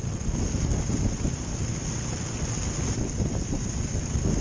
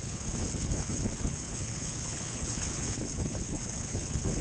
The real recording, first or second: first